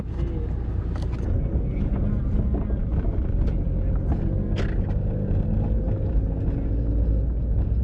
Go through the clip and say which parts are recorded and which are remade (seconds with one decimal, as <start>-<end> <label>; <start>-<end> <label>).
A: 0.0-7.8 recorded